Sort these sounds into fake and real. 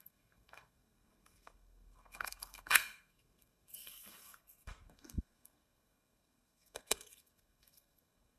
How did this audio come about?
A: fake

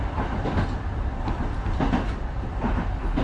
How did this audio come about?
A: real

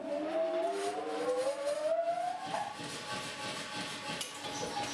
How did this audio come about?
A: real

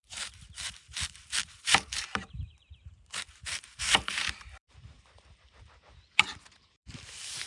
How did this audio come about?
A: fake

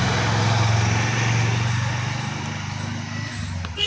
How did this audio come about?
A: real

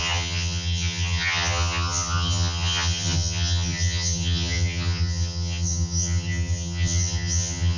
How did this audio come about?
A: fake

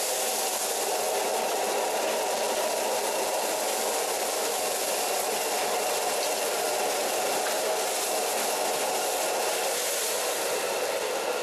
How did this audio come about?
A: real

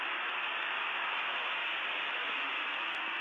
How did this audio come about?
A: real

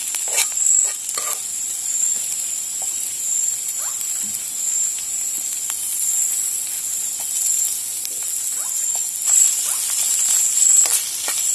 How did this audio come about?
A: real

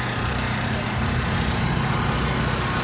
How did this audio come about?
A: fake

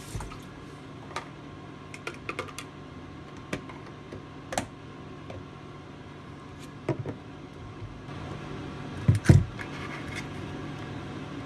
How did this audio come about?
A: real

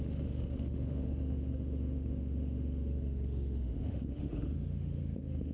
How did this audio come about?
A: fake